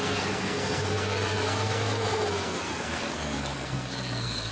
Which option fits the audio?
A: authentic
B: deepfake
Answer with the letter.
B